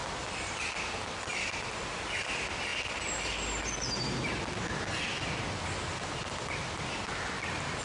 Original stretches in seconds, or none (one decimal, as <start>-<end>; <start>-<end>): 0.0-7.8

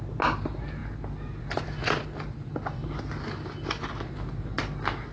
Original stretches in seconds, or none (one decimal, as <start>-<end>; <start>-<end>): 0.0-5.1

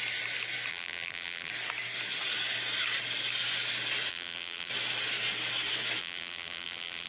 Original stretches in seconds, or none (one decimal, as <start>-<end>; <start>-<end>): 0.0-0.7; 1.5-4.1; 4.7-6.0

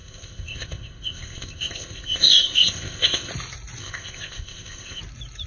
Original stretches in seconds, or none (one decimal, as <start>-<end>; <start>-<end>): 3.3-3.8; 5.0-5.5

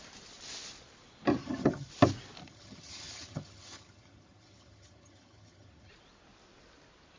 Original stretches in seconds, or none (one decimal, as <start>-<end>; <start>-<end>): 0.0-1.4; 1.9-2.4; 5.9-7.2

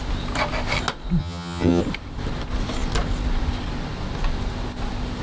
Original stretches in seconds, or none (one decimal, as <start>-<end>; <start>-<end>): 0.0-1.2; 1.8-5.2